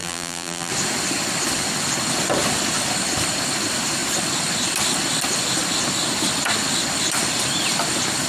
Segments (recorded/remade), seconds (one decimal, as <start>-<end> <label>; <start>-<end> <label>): 0.0-0.7 remade; 0.7-8.3 recorded